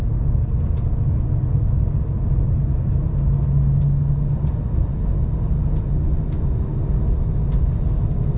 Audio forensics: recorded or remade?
recorded